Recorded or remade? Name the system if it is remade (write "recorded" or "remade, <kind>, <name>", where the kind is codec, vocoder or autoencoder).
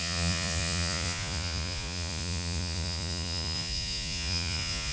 remade, vocoder, Vocos